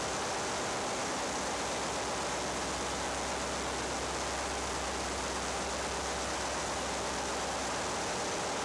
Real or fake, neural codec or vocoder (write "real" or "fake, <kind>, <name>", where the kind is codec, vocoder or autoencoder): real